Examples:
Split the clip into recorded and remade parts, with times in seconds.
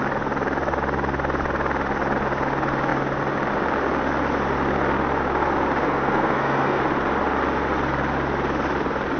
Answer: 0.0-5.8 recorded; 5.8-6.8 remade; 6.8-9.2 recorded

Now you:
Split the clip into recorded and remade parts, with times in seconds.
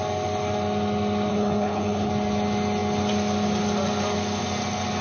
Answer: 0.0-1.3 recorded; 1.3-2.1 remade; 2.1-5.0 recorded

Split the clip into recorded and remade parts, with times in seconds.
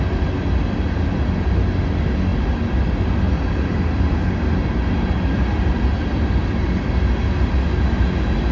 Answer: 0.0-8.5 recorded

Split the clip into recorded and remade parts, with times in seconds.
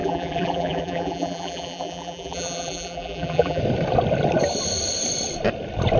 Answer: 0.0-3.6 remade; 3.6-6.0 recorded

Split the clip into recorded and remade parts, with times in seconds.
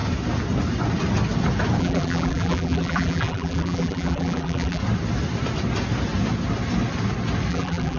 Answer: 0.0-1.8 recorded; 1.8-4.8 remade; 4.8-7.5 recorded; 7.5-8.0 remade